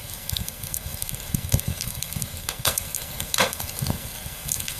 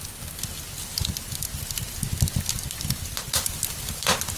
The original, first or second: second